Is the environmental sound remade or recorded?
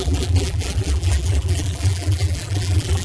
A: remade